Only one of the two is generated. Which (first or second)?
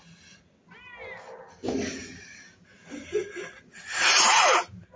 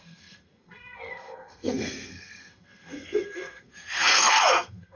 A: second